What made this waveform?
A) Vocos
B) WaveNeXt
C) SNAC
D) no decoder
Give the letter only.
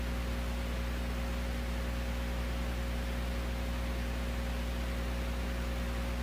D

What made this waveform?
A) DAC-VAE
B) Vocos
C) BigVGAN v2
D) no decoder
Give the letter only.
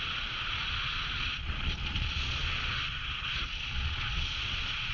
B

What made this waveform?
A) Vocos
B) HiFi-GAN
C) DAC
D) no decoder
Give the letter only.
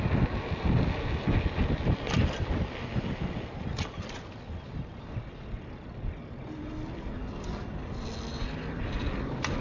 D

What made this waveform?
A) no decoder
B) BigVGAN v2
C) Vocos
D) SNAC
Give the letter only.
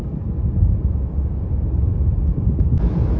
A